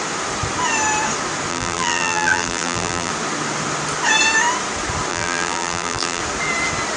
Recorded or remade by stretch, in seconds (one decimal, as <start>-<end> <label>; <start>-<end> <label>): 0.0-1.5 recorded; 1.5-3.1 remade; 3.1-5.1 recorded; 5.1-6.2 remade; 6.2-7.0 recorded

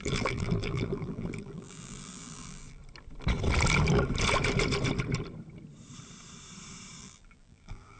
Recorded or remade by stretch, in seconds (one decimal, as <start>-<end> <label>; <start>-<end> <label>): 0.0-2.8 remade; 2.8-7.0 recorded; 7.0-8.0 remade

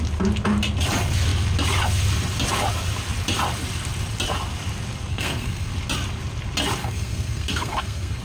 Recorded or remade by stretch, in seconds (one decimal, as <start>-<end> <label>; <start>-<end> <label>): 0.0-5.1 recorded; 5.1-5.7 remade; 5.7-6.8 recorded; 6.8-8.2 remade

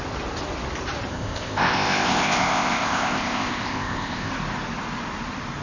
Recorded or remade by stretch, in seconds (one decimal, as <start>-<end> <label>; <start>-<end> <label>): 0.0-1.1 recorded; 1.1-4.3 remade; 4.3-5.6 recorded

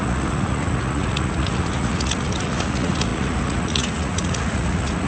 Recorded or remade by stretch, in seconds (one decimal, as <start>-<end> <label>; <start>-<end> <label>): 0.0-5.1 remade

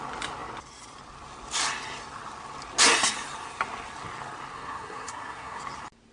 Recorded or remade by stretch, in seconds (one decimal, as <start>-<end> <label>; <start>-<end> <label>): 0.0-4.5 recorded; 4.5-5.6 remade; 5.6-6.1 recorded

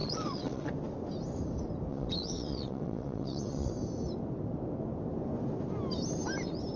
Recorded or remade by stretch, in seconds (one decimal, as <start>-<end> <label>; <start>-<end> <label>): 0.0-0.7 remade; 0.7-1.9 recorded; 1.9-3.7 remade; 3.7-6.8 recorded

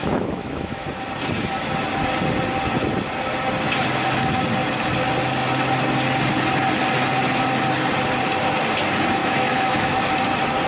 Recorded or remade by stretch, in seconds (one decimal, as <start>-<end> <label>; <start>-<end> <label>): 0.0-0.9 remade; 0.9-9.2 recorded; 9.2-10.0 remade; 10.0-10.7 recorded